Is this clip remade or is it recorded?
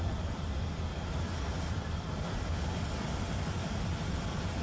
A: remade